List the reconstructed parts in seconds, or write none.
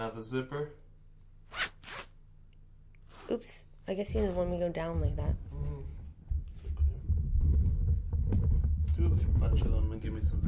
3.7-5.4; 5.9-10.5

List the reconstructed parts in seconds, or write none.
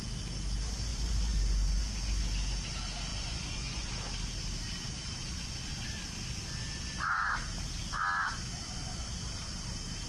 0.9-2.0; 3.1-3.9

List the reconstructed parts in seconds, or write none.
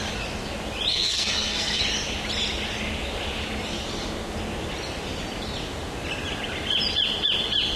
0.9-1.8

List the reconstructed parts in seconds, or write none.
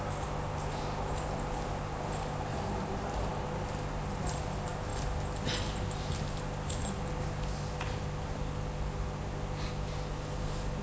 2.5-3.3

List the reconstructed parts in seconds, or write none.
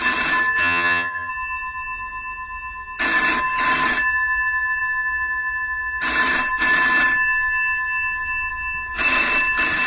0.6-1.3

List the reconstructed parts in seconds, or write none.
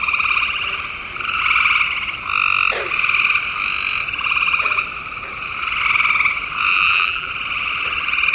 6.7-7.3